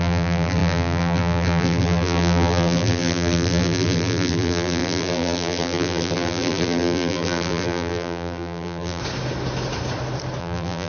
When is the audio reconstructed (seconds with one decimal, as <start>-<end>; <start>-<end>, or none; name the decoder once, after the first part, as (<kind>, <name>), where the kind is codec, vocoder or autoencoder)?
0.0-9.0 (vocoder, BigVGAN v2); 10.4-10.9